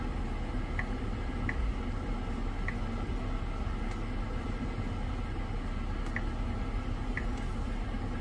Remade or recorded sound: recorded